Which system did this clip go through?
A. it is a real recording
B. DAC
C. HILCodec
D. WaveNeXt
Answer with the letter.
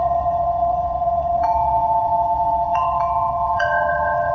D